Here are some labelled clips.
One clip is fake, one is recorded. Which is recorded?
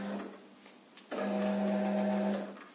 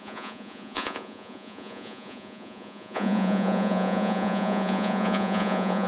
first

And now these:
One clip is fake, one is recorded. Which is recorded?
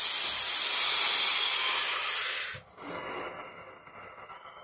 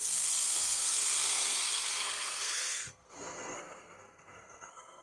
first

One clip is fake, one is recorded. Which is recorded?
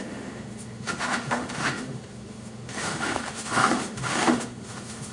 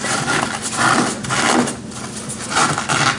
second